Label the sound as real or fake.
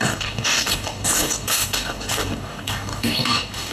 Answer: fake